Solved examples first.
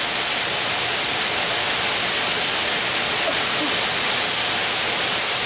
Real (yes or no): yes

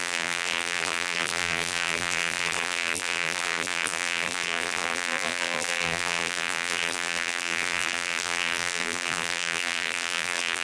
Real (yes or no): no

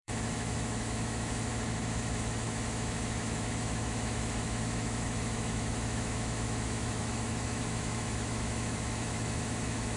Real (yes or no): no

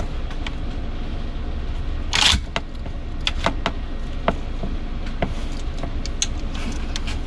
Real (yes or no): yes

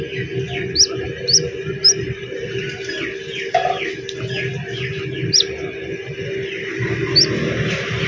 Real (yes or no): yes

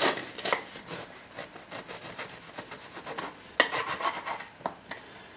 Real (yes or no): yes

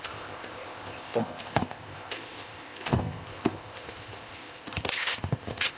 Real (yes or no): no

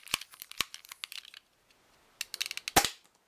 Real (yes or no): yes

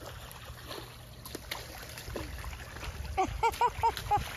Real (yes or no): yes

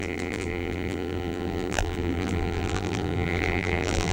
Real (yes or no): no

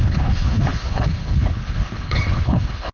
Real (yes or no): no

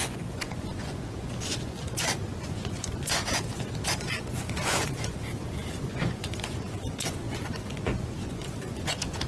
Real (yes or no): no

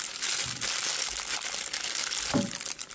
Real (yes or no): yes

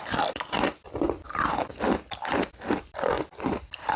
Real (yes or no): no